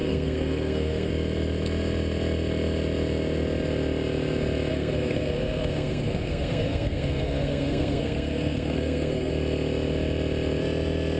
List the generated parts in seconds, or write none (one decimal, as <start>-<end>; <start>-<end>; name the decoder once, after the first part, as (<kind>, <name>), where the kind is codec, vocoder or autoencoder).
0.0-1.1 (codec, SNAC); 4.7-9.3